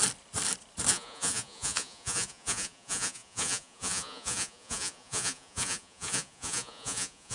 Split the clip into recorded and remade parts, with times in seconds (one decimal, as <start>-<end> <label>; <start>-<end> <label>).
0.0-0.9 recorded; 0.9-7.3 remade